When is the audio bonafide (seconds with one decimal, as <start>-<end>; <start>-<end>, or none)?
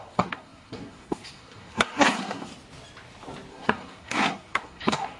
2.5-3.5